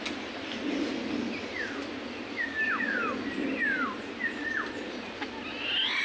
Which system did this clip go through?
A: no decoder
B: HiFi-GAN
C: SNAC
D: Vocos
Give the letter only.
A